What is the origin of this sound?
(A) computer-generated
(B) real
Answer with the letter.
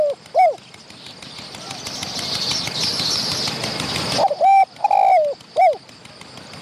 B